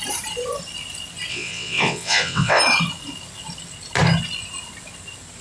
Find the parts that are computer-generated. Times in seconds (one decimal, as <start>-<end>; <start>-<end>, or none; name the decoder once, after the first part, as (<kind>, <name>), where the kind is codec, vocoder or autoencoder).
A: 1.3-2.6 (vocoder, WaveNeXt)